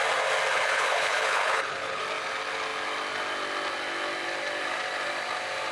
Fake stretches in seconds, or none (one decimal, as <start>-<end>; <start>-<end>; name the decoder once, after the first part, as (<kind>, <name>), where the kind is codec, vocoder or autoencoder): 0.5-2.0 (codec, HILCodec)